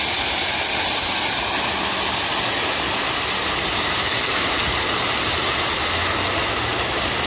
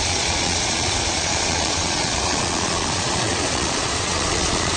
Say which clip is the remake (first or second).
second